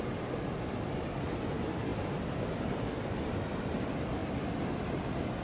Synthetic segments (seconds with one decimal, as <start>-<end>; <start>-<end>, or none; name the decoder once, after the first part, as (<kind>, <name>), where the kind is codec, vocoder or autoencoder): none